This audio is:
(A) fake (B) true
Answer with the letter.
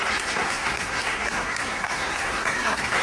A